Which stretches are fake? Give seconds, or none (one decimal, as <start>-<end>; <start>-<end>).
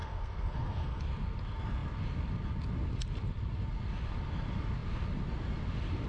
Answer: 0.0-1.0